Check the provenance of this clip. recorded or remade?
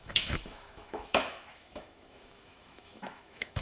remade